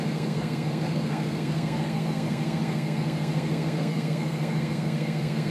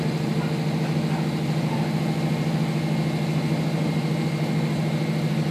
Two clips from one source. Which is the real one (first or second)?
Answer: second